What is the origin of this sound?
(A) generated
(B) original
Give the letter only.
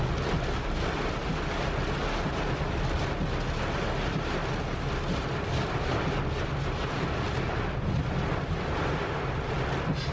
B